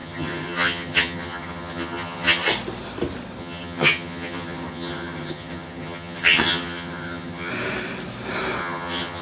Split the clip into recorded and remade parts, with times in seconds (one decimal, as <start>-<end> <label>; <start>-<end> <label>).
0.0-2.5 remade; 2.5-3.4 recorded; 3.4-7.5 remade; 7.5-8.6 recorded; 8.6-9.2 remade